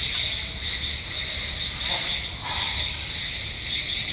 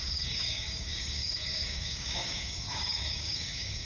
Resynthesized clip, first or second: second